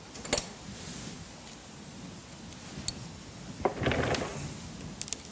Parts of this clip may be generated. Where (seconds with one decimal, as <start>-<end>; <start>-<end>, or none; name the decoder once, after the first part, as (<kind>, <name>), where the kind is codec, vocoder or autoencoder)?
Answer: none